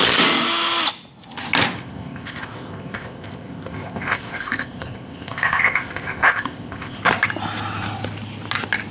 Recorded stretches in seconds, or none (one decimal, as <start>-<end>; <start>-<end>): 0.0-1.8; 7.0-8.9